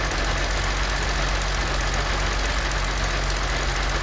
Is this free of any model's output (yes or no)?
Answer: yes